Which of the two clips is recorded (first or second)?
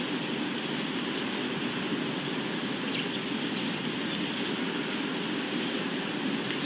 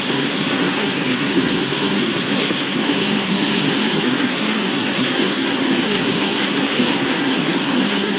first